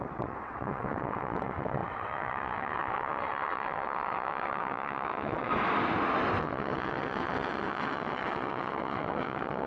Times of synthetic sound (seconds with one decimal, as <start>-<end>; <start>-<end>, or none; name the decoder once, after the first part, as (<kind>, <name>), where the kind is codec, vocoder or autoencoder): 0.0-5.5 (vocoder, WaveNeXt); 6.4-9.7